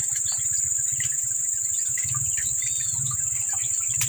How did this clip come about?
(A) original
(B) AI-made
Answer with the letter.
A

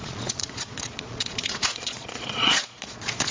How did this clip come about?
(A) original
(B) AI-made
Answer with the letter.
B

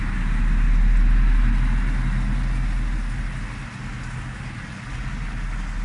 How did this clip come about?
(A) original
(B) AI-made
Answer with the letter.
A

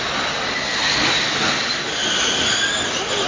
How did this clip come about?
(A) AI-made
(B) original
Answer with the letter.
B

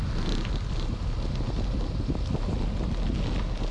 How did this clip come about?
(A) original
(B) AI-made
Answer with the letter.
A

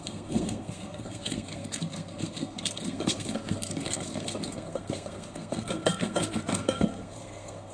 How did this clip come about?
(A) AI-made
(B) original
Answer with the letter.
A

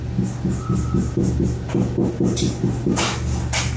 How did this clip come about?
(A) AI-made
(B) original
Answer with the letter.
B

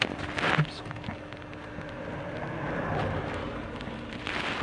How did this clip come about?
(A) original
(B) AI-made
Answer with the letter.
A